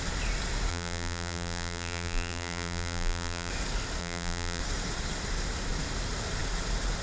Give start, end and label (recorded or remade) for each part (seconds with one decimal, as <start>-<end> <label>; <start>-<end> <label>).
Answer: 0.0-0.7 recorded; 0.7-3.5 remade; 3.5-4.0 recorded; 4.0-4.6 remade; 4.6-7.0 recorded

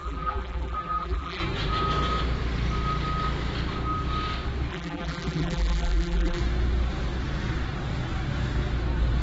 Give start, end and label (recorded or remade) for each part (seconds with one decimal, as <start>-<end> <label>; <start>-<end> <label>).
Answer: 0.0-1.4 remade; 1.4-4.7 recorded; 4.7-6.4 remade; 6.4-9.2 recorded

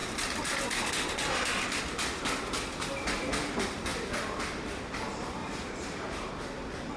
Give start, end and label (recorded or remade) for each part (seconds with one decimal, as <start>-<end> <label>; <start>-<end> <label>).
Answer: 0.0-0.9 remade; 0.9-5.4 recorded; 5.4-6.3 remade; 6.3-7.0 recorded

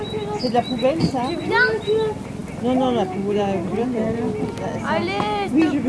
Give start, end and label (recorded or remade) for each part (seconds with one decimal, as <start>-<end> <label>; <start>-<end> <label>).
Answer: 0.0-5.9 recorded